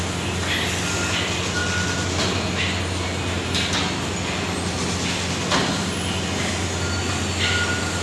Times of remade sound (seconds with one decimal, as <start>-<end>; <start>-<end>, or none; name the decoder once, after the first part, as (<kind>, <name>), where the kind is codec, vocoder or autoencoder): none